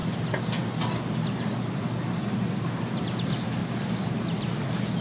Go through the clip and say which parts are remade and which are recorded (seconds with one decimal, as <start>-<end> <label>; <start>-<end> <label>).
0.0-5.0 recorded